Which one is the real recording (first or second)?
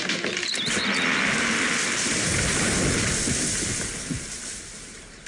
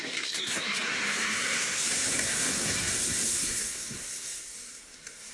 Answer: first